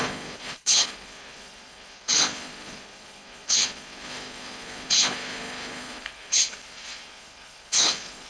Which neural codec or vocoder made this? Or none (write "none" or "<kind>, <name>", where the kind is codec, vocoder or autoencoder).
codec, HILCodec